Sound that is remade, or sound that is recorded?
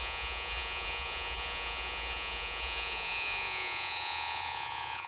remade